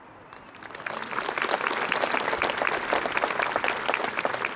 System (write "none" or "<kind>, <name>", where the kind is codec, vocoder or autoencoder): none